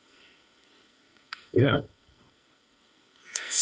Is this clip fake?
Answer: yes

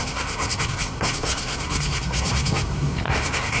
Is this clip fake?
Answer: yes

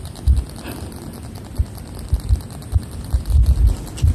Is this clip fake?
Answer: no